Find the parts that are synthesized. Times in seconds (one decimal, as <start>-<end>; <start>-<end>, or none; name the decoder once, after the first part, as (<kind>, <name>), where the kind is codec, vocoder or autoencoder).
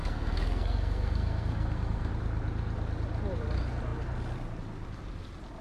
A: 0.0-2.1 (codec, SNAC)